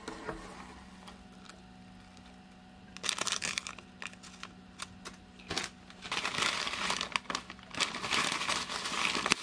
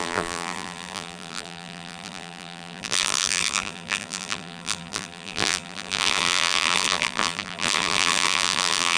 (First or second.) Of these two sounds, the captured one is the first